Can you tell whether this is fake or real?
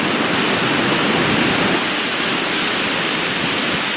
real